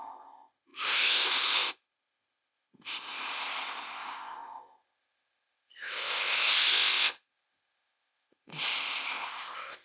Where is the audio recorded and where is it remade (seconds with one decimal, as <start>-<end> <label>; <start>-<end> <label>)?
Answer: 0.0-9.8 remade